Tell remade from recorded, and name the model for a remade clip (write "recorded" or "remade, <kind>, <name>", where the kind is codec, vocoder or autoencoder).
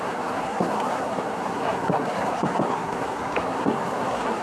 remade, codec, SNAC